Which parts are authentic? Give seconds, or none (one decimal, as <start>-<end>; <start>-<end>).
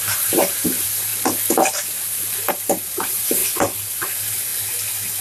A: 1.1-2.5; 3.4-3.9; 4.5-5.2